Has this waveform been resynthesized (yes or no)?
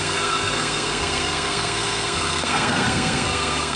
yes